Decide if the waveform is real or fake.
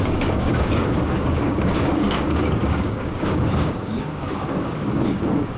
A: fake